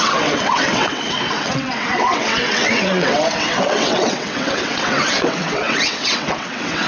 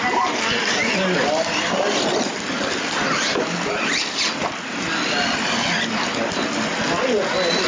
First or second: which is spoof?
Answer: first